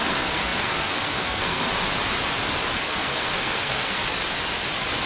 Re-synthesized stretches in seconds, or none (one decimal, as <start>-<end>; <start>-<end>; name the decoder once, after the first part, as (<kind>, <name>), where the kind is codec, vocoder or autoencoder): 0.0-1.7 (codec, SNAC); 2.8-4.0